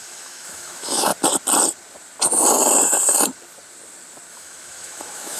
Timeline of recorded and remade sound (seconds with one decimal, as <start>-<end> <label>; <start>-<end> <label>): 0.0-1.1 remade; 1.1-4.3 recorded; 4.3-5.4 remade